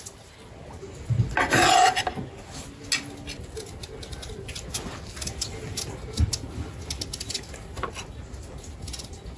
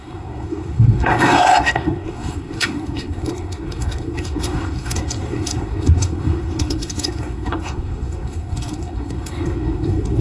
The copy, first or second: second